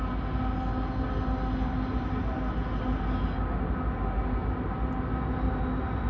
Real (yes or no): yes